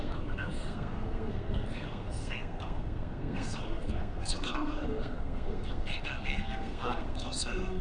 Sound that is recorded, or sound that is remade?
remade